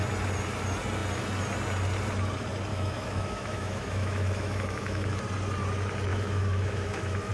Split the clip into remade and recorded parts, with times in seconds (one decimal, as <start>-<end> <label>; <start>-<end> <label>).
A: 0.0-2.7 recorded; 2.7-5.2 remade; 5.2-6.1 recorded; 6.1-7.3 remade